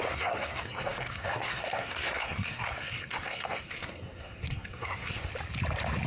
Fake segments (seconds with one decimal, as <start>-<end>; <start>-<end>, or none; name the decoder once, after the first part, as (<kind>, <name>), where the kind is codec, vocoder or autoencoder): 0.0-5.3 (codec, SNAC)